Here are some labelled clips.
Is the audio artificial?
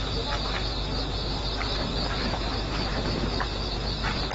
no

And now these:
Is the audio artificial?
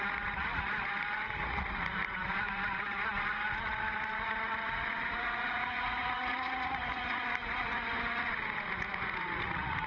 yes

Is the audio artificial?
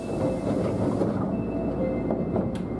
no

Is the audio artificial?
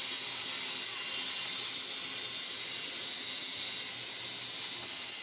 no